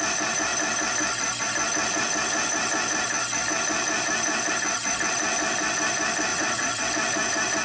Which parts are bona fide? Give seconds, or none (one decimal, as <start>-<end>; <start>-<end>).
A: 0.0-6.3; 6.8-7.6

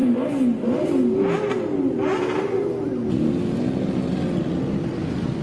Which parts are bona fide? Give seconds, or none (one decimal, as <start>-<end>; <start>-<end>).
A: 0.0-5.4

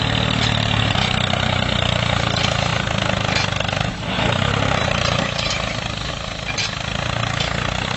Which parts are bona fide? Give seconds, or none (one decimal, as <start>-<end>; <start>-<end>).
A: 0.0-4.8; 5.5-8.0

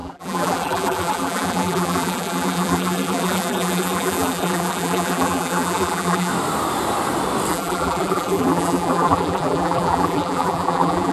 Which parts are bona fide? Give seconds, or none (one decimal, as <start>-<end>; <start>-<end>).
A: 6.3-7.5

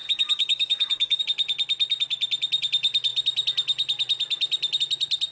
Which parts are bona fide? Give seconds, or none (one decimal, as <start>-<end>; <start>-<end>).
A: 1.2-5.3

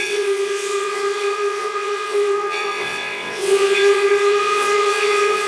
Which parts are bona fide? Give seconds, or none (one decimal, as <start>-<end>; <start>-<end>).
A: none